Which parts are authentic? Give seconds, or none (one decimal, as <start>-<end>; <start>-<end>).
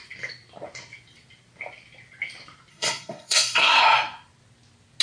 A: 0.0-2.7; 3.8-5.0